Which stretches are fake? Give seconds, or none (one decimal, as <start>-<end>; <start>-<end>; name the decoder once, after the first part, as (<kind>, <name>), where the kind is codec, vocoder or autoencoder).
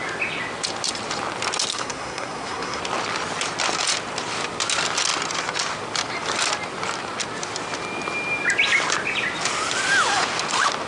1.7-2.8 (codec, SNAC)